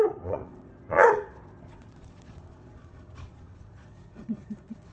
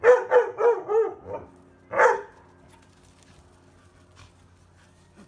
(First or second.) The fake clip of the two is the first